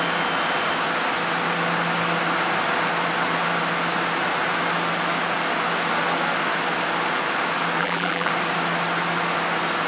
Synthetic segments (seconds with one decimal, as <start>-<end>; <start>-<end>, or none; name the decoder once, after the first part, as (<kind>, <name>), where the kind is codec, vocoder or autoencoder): 7.8-8.3 (vocoder, BigVGAN v2)